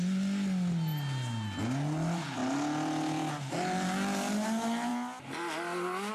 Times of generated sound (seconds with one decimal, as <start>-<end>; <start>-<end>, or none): none